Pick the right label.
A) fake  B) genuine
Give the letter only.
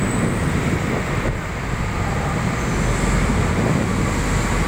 B